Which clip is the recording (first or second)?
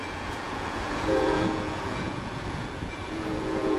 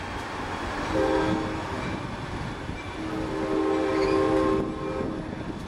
second